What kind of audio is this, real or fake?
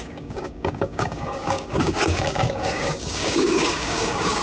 fake